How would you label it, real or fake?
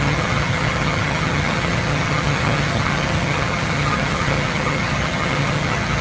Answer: fake